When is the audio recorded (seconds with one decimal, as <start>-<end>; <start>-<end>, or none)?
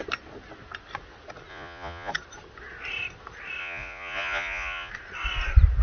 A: 0.0-1.5; 2.1-3.6; 4.9-5.8